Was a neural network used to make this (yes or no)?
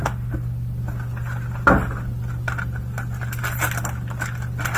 no